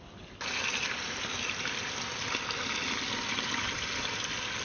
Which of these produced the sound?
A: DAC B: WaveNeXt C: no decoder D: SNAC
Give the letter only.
C